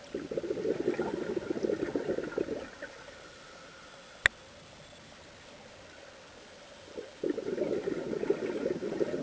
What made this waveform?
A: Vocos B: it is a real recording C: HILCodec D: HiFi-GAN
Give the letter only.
B